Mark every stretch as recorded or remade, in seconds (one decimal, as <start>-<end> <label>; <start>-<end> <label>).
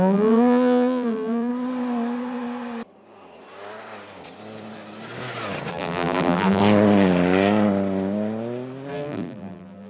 0.0-1.5 remade; 1.5-5.7 recorded; 5.7-6.6 remade; 6.6-8.9 recorded; 8.9-9.9 remade